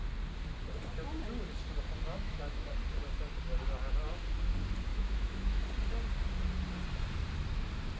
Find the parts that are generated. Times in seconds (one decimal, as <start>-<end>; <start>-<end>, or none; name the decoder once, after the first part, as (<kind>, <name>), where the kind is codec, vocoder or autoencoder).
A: 2.1-2.7 (autoencoder, DAC-VAE); 4.9-5.6